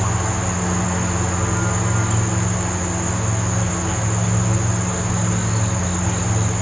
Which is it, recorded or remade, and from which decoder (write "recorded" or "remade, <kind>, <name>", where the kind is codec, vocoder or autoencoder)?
recorded